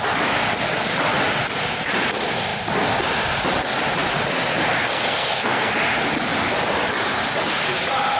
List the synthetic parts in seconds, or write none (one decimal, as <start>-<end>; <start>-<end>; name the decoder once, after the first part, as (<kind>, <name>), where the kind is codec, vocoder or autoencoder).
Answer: 4.8-5.7 (codec, SNAC)

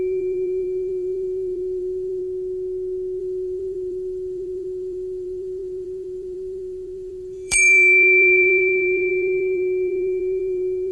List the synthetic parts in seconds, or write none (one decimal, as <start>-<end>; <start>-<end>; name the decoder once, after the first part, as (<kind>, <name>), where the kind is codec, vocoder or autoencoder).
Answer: 0.0-2.2 (vocoder, BigVGAN v2); 3.2-10.9

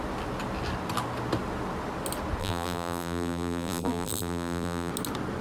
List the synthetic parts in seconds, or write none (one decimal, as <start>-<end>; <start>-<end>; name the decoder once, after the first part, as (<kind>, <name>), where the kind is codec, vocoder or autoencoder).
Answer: 2.4-4.9 (vocoder, BigVGAN v2)